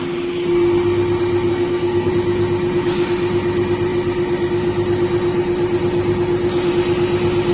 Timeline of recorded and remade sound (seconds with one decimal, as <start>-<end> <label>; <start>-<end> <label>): 0.0-1.5 recorded; 1.5-2.1 remade; 2.1-7.5 recorded